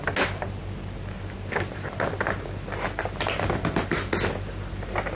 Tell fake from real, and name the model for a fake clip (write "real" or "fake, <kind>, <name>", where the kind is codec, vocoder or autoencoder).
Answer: real